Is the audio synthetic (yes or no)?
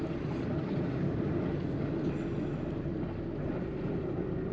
no